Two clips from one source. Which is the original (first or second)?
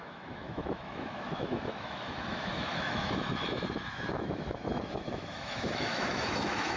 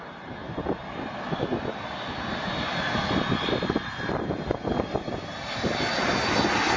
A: second